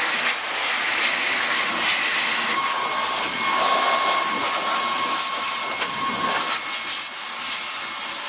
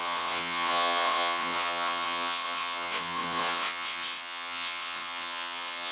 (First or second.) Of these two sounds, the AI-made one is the second